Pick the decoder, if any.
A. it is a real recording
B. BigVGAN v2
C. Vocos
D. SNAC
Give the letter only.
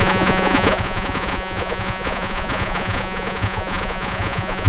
C